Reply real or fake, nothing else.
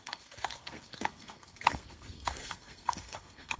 fake